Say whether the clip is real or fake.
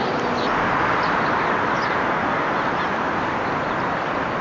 real